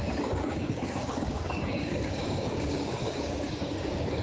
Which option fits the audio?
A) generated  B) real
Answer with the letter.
A